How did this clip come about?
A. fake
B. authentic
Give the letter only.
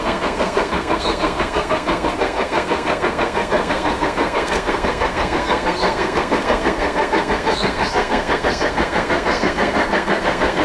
A